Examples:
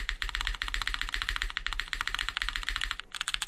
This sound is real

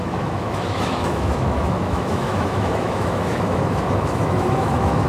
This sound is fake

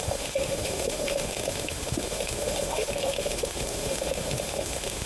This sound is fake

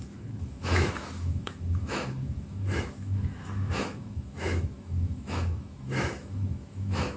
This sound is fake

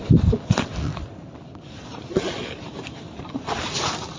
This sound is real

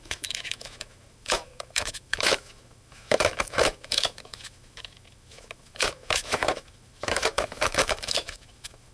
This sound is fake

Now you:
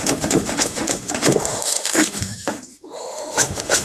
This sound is fake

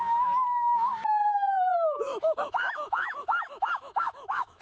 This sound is fake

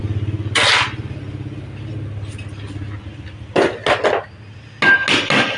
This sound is real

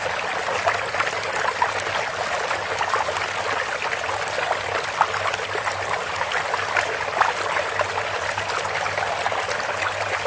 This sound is real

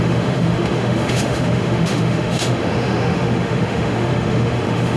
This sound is fake